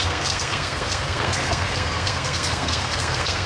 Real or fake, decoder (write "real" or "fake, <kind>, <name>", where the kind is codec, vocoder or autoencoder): fake, codec, SNAC